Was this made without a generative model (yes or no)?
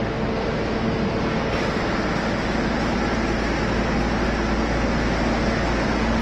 yes